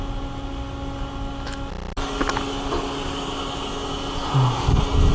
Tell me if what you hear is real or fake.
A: real